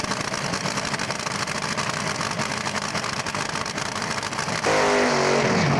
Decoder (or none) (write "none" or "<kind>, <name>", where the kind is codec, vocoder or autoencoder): none